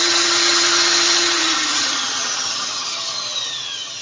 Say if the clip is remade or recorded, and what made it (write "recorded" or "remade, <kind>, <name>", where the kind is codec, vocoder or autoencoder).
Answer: remade, vocoder, HiFi-GAN